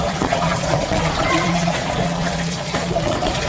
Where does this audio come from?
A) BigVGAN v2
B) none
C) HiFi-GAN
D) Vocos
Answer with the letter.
D